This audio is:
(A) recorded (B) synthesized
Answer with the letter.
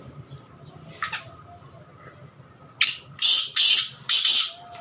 A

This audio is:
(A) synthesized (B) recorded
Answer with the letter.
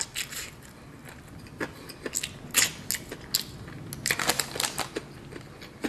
B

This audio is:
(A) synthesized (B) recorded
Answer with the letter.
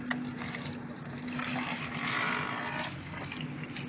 B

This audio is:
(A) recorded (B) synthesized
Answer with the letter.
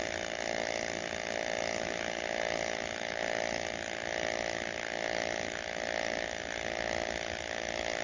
A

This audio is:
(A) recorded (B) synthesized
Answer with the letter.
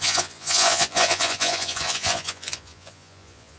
B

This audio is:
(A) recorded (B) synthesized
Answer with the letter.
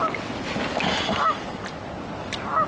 A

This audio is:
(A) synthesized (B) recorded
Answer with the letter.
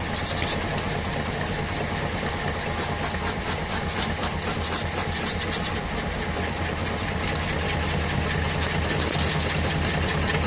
B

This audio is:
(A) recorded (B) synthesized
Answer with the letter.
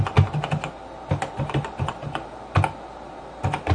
A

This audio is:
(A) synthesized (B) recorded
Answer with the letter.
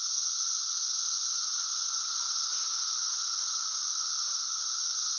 B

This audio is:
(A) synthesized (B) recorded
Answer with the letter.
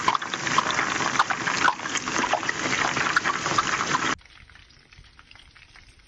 B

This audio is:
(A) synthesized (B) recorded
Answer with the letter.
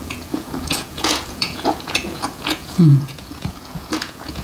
A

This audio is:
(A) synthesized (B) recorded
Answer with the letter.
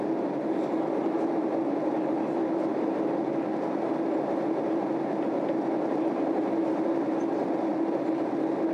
B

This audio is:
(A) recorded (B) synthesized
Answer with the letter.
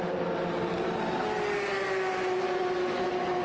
A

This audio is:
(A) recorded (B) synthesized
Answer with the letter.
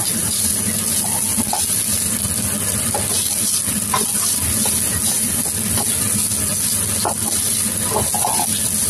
A